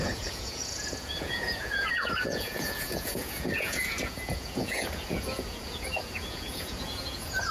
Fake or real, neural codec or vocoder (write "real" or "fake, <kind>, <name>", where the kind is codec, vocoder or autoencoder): fake, vocoder, Vocos